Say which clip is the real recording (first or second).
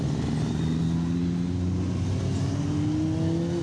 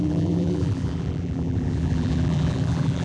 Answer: first